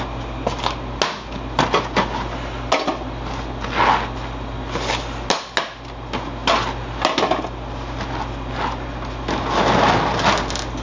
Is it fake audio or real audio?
real